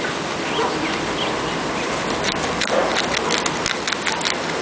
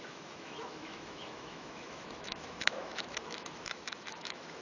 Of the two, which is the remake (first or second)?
second